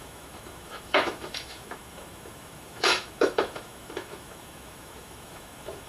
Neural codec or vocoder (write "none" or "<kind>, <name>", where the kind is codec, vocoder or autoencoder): autoencoder, DAC-VAE